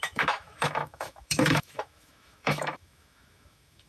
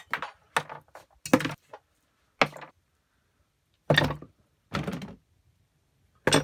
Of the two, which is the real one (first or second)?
second